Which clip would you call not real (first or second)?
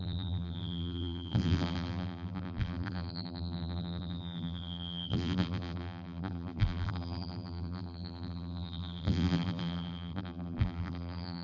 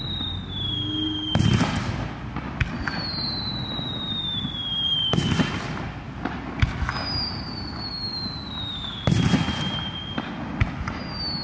first